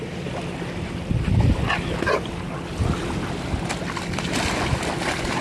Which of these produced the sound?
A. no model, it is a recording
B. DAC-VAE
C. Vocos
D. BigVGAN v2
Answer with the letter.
A